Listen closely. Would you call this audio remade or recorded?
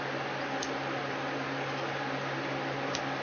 recorded